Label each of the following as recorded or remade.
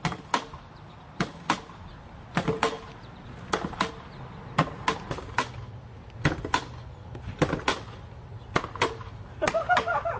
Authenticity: recorded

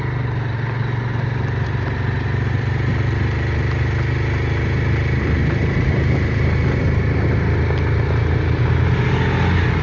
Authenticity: recorded